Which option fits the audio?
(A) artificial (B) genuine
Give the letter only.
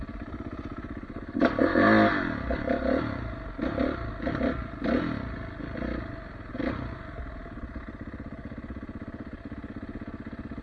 B